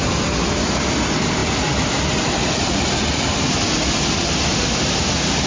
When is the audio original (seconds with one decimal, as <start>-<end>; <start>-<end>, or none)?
0.0-5.5